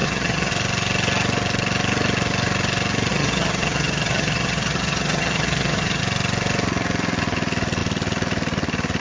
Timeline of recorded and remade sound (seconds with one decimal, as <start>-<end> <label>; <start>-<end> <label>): 0.0-0.5 remade; 0.5-3.1 recorded; 3.1-6.0 remade; 6.0-9.0 recorded